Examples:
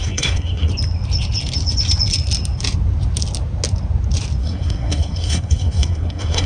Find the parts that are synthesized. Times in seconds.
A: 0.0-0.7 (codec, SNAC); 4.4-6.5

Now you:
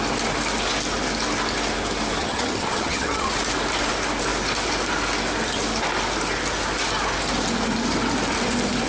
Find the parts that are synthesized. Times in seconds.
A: 2.2-3.3 (vocoder, HiFi-GAN)